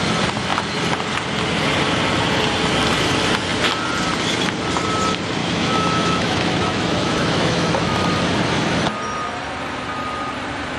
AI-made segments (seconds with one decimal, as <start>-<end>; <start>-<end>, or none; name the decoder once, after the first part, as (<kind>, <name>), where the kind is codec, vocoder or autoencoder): 5.4-8.1 (autoencoder, DAC-VAE)